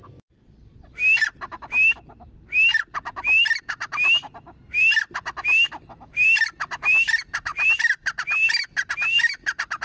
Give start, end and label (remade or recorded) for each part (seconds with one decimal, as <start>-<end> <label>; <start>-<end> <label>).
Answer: 0.0-2.9 recorded; 2.9-3.6 remade; 3.6-9.8 recorded

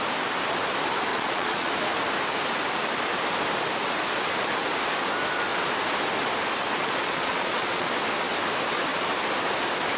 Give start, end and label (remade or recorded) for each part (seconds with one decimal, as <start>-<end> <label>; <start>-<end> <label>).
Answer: 0.0-1.1 recorded; 1.1-1.7 remade; 1.7-6.8 recorded; 6.8-7.9 remade; 7.9-10.0 recorded

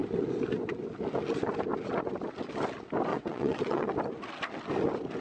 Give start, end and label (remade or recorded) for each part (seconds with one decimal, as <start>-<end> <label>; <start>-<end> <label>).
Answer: 0.0-3.1 recorded; 3.1-3.9 remade; 3.9-5.2 recorded

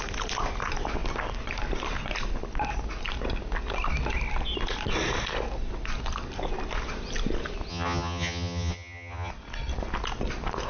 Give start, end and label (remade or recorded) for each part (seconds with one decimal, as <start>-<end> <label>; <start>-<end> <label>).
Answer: 0.0-7.7 recorded; 7.7-9.3 remade; 9.3-10.7 recorded

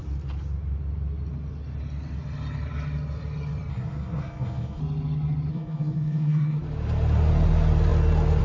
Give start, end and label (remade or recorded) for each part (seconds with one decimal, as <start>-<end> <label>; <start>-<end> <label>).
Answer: 0.0-3.7 recorded; 3.7-4.8 remade; 4.8-5.5 recorded; 5.5-6.6 remade; 6.6-8.4 recorded

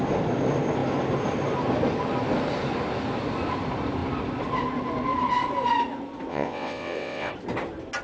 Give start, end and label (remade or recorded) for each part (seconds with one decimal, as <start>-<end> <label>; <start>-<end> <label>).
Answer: 0.0-6.3 recorded; 6.3-7.3 remade; 7.3-8.0 recorded

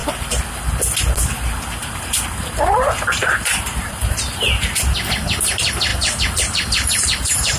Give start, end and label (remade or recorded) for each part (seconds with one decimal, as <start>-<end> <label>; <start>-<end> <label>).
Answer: 0.0-1.8 recorded; 1.8-4.2 remade; 4.2-5.9 recorded; 5.9-7.6 remade